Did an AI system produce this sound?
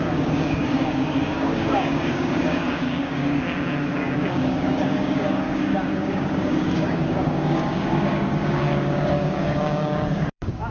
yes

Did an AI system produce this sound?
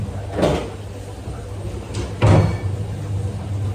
no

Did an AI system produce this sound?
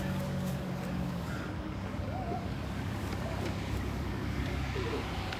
yes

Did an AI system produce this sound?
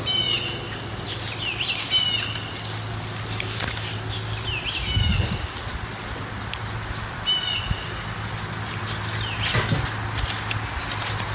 no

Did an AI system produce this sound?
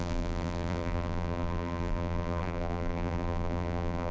yes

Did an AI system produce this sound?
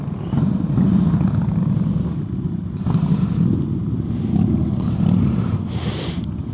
no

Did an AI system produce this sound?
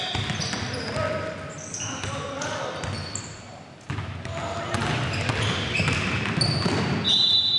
no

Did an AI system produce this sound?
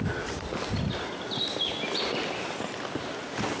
no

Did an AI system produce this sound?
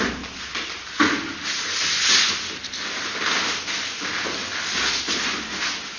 no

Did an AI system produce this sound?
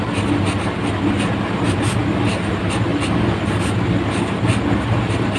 no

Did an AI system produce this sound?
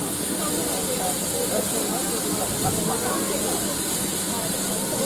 no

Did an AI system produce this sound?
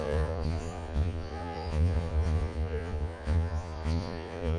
yes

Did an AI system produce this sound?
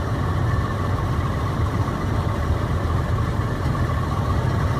yes